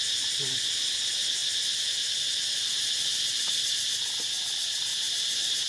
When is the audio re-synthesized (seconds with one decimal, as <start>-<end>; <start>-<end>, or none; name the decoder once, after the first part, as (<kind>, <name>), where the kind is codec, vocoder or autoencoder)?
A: 4.9-5.7 (vocoder, BigVGAN v2)